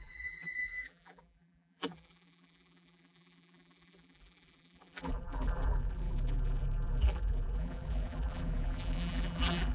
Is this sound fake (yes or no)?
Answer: yes